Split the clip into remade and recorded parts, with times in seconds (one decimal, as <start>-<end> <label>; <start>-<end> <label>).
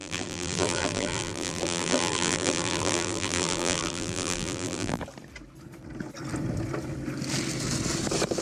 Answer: 0.0-5.0 remade; 5.0-8.4 recorded